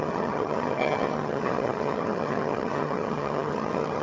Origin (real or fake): fake